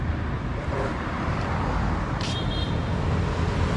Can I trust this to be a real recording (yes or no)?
no